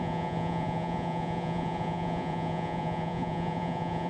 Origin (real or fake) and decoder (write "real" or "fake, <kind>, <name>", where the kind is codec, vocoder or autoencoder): fake, vocoder, Vocos